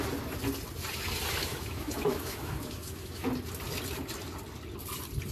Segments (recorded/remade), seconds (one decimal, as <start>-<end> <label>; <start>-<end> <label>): 0.0-1.4 recorded; 1.4-3.3 remade; 3.3-5.3 recorded

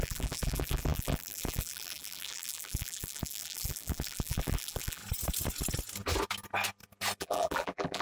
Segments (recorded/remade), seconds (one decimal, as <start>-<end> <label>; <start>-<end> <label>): 0.0-5.0 remade; 5.0-7.2 recorded; 7.2-8.0 remade

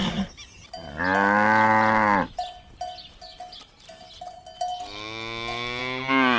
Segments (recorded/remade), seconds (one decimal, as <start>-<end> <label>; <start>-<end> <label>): 0.0-6.4 recorded

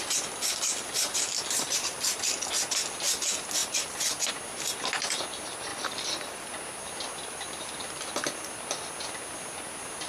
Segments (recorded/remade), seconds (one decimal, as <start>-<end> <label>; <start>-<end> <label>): 0.0-5.7 recorded; 5.7-6.5 remade; 6.5-10.1 recorded

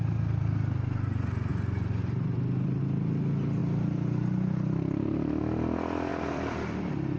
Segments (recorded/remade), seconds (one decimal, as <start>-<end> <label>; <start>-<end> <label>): 0.0-1.5 recorded; 1.5-2.8 remade; 2.8-6.1 recorded; 6.1-7.2 remade

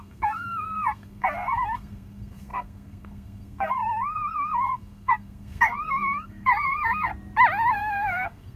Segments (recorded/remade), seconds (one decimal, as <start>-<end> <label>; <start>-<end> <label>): 0.0-7.1 remade; 7.1-7.7 recorded; 7.7-8.6 remade